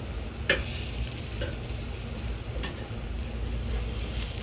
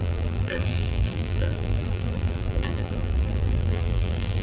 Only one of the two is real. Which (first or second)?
first